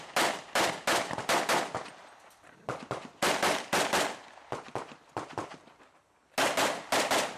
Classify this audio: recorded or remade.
recorded